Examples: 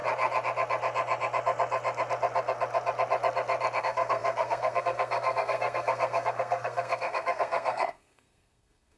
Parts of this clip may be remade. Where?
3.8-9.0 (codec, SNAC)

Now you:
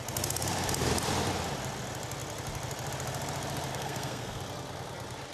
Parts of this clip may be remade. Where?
3.7-4.4 (codec, SNAC)